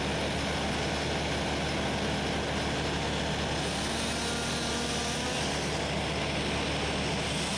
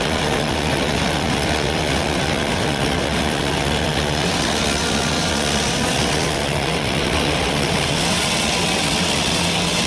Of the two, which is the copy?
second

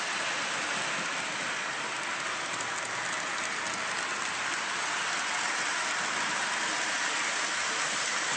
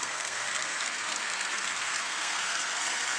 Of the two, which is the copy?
second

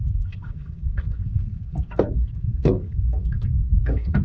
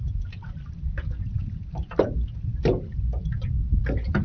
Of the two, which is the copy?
first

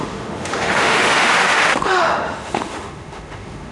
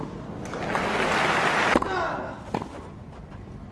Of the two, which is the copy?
first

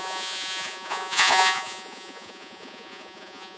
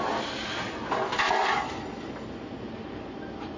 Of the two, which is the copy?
first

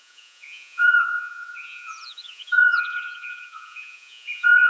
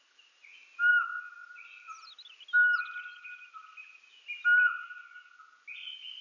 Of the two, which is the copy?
first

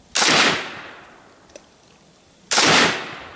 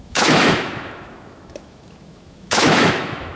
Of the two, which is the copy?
second